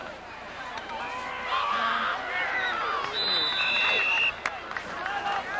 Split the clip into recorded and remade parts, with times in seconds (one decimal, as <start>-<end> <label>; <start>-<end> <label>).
0.0-1.0 remade; 1.0-5.6 recorded